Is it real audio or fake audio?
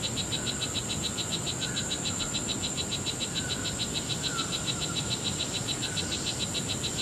real